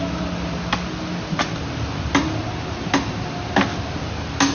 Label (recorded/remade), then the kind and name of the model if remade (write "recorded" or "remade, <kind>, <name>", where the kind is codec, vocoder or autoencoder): recorded